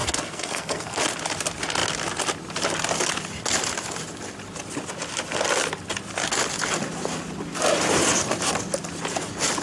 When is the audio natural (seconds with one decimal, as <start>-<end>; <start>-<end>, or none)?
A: 1.0-9.6